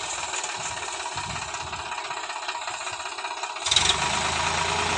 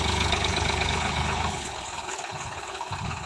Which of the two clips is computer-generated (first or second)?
second